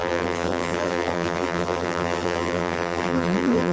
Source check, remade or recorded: remade